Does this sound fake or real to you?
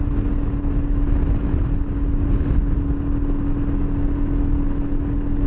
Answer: real